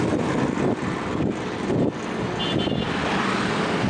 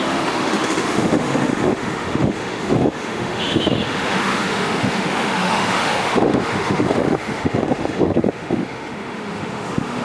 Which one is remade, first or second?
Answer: second